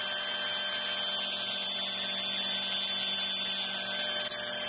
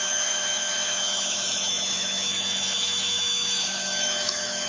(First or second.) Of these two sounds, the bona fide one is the first